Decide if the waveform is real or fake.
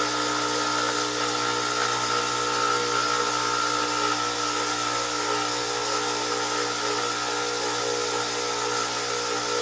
real